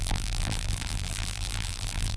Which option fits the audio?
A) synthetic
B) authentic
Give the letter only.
A